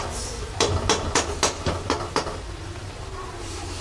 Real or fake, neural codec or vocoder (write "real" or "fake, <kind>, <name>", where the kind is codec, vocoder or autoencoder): real